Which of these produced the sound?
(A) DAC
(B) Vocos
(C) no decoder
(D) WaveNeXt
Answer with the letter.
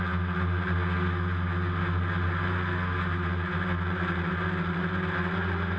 C